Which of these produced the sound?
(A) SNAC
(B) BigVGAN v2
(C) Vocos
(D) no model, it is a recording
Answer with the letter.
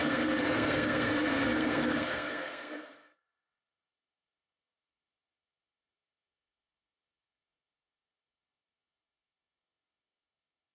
A